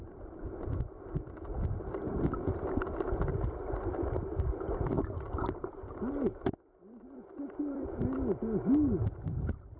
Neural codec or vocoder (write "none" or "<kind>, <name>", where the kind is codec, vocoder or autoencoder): vocoder, BigVGAN v2